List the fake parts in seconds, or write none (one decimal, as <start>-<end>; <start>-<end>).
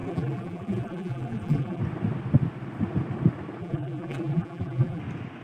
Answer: 0.0-1.8; 3.6-5.0